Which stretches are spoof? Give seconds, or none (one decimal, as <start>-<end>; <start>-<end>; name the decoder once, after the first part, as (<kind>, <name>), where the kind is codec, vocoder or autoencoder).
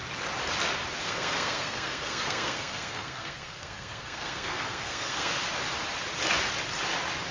1.0-5.4 (codec, SNAC)